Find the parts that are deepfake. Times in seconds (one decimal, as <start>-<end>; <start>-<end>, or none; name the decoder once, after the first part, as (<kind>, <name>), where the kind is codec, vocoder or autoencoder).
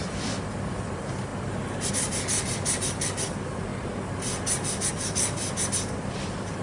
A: 0.0-1.3 (vocoder, BigVGAN v2); 1.9-3.7; 4.9-6.6